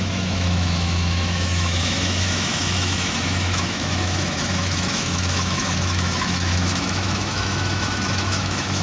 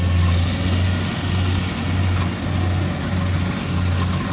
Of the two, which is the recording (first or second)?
second